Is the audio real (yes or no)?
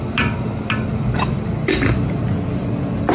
no